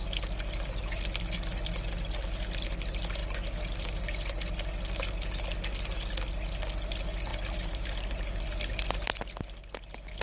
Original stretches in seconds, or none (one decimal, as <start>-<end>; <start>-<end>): 0.0-7.3; 8.4-10.2